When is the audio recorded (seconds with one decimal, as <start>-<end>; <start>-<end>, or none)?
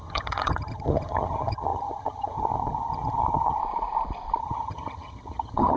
3.6-4.4